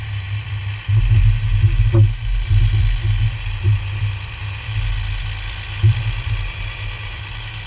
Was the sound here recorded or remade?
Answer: recorded